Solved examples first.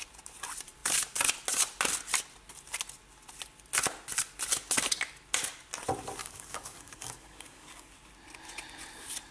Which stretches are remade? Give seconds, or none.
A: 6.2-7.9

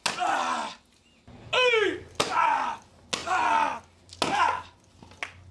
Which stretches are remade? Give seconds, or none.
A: none

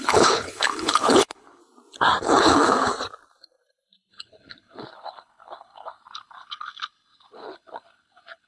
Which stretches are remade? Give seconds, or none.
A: 0.0-1.6; 2.2-2.9; 4.1-8.5

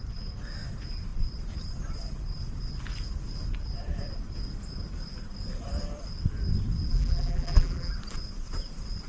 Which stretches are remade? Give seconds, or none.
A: 6.9-7.9

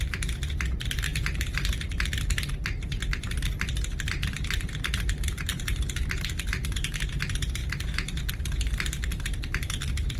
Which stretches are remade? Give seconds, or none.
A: 0.0-5.5; 6.6-10.2

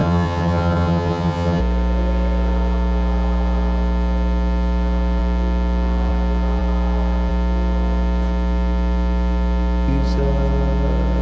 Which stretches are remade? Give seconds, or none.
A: 0.0-1.6